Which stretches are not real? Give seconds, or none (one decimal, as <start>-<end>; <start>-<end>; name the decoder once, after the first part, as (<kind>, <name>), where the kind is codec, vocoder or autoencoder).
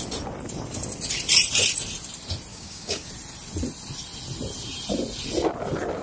2.5-3.1 (codec, DAC)